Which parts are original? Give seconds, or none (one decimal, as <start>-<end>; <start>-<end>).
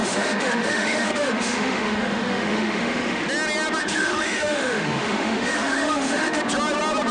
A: 3.2-3.8; 6.4-7.1